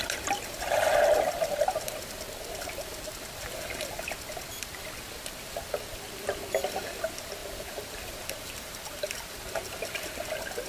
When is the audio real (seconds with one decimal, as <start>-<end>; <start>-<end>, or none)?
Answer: 0.0-7.4; 9.7-10.7